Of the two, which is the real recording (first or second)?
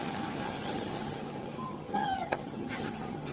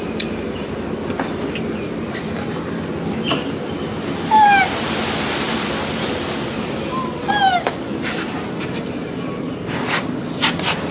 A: second